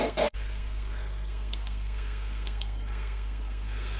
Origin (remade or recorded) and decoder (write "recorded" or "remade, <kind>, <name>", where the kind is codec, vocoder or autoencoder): remade, codec, SNAC